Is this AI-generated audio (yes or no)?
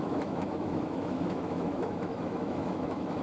yes